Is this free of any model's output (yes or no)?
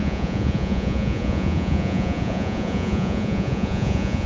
no